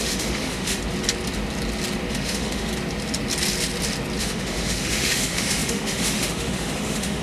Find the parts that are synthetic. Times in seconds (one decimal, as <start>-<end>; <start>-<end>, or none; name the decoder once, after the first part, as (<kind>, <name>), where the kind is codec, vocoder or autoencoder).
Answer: 0.0-0.8 (autoencoder, DAC-VAE); 2.1-2.7; 4.2-7.2